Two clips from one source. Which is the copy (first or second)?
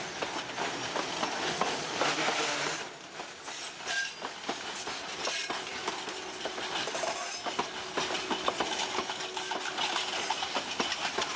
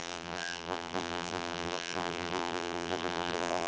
second